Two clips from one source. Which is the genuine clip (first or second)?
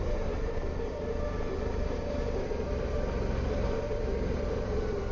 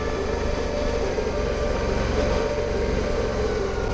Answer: second